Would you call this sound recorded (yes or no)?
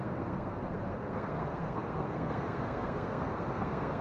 no